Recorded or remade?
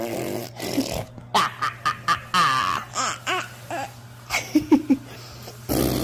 recorded